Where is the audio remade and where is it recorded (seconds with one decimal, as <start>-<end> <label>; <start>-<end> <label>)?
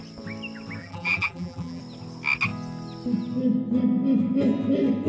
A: 0.0-0.8 recorded; 0.8-1.8 remade; 1.8-5.1 recorded